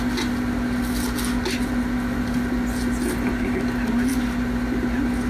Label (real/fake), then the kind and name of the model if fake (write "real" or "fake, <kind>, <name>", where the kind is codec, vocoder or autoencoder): real